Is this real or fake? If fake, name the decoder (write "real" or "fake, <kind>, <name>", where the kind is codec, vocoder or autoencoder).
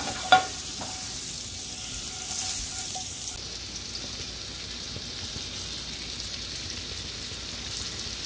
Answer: real